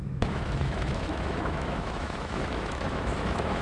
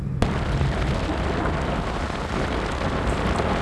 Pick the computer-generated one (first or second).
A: first